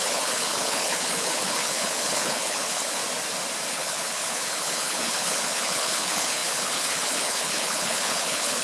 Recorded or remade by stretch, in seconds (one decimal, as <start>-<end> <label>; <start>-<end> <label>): 0.0-3.0 remade; 3.0-3.7 recorded; 3.7-8.6 remade